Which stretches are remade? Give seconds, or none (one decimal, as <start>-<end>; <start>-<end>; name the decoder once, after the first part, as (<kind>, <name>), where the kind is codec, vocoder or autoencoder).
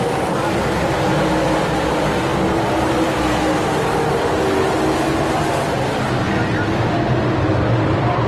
0.0-2.3 (vocoder, BigVGAN v2); 5.4-6.4; 7.5-8.3